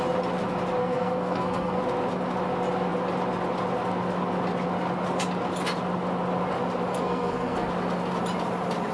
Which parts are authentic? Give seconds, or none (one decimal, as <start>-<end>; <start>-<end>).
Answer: 0.0-0.8; 1.8-6.9; 7.7-8.9